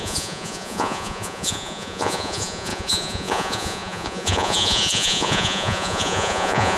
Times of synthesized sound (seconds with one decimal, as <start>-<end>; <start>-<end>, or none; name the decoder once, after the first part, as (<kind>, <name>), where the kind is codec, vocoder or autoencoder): 0.0-6.8 (vocoder, Vocos)